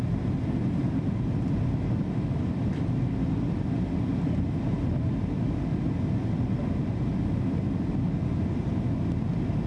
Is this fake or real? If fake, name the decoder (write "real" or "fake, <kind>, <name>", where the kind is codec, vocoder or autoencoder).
real